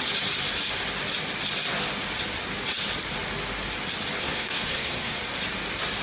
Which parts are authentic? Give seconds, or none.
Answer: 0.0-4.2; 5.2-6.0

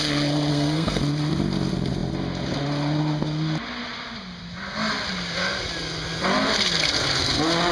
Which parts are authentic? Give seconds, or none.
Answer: 0.0-0.5; 1.0-7.7

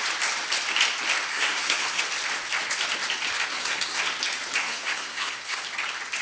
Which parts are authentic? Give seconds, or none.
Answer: 0.0-1.3; 2.0-3.5; 4.0-4.6; 5.6-6.2